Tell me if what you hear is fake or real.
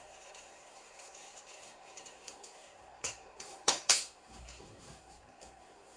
fake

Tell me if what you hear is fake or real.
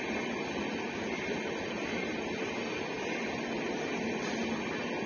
real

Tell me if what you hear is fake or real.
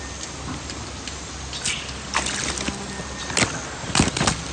real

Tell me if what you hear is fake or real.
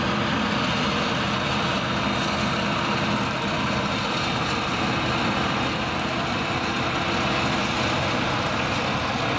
real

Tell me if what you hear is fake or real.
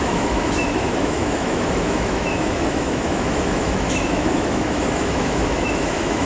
fake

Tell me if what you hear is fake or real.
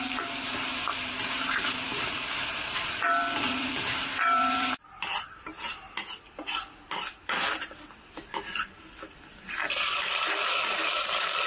fake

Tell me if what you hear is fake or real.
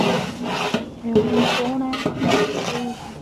real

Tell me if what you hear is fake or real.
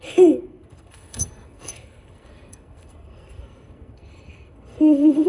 fake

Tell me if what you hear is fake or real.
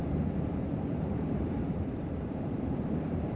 fake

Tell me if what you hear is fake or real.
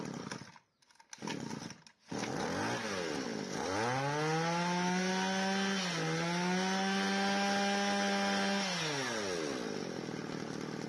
real